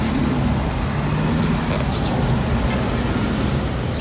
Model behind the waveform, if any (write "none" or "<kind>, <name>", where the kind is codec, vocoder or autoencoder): none